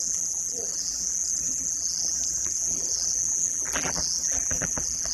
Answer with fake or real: fake